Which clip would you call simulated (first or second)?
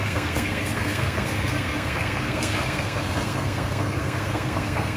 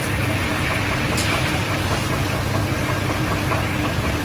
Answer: first